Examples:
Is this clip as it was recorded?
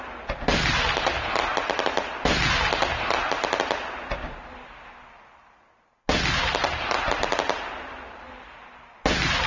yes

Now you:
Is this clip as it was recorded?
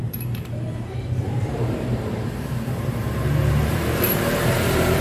no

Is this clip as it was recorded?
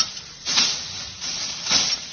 yes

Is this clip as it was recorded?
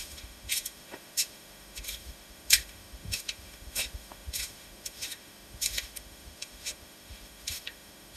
no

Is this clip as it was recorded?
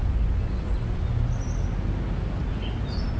yes